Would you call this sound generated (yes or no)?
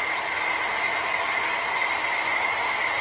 no